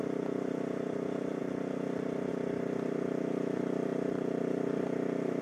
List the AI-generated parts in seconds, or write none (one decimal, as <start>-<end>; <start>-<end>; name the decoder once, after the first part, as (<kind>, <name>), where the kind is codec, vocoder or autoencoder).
0.0-1.4 (vocoder, BigVGAN v2); 2.3-5.4